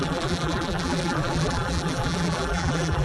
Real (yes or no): no